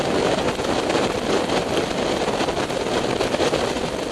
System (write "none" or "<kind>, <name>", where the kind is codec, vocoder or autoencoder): none